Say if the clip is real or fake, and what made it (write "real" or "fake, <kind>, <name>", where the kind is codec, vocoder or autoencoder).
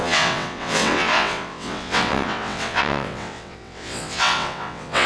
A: fake, vocoder, WaveNeXt